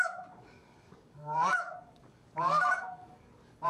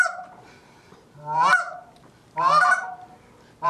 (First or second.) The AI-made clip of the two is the first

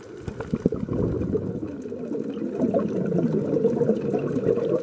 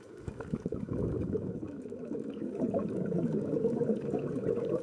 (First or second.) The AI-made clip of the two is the second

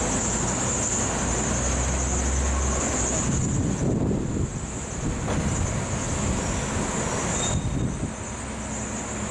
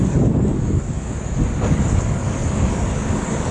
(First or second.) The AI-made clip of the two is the second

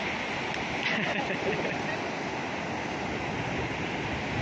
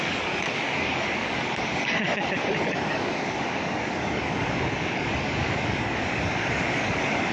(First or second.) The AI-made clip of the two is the second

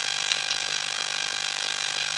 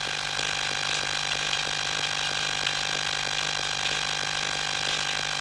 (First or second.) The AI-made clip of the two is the first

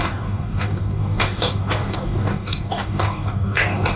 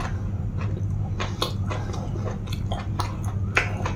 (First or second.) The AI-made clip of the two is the first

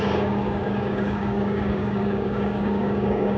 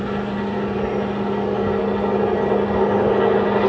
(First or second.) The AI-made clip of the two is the first